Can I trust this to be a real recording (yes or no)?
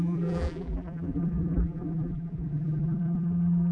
no